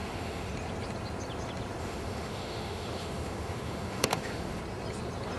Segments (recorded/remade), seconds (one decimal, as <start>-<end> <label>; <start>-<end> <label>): 0.0-0.5 remade; 0.5-1.8 recorded; 1.8-4.6 remade; 4.6-5.4 recorded